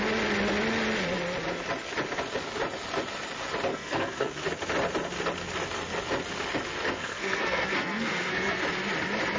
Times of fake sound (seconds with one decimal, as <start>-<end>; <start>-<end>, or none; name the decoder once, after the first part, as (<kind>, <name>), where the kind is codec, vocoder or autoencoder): 3.7-4.3 (codec, SNAC); 7.0-8.6